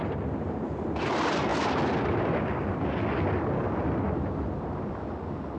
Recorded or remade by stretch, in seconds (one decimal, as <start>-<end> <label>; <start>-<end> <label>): 0.0-5.6 recorded